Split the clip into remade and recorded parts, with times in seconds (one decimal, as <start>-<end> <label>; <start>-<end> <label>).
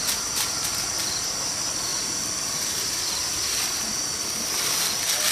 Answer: 0.0-5.3 recorded